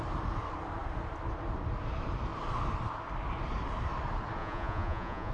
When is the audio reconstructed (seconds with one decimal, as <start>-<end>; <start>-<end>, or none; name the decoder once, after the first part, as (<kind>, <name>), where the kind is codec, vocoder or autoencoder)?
4.4-5.3 (vocoder, Vocos)